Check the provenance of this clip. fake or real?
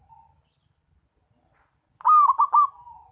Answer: real